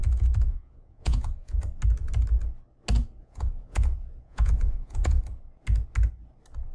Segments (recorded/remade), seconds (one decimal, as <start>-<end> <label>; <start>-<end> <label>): 0.0-1.6 remade; 1.6-3.2 recorded; 3.2-5.2 remade; 5.2-6.7 recorded